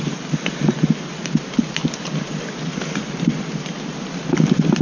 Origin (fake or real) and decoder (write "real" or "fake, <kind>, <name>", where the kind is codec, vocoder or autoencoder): real